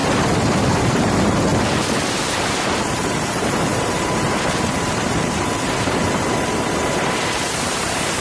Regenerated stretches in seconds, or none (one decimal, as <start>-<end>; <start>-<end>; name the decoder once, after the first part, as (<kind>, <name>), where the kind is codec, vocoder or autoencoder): 0.8-1.5 (vocoder, BigVGAN v2); 2.2-8.2